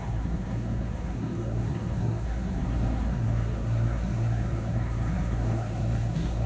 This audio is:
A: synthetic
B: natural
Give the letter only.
A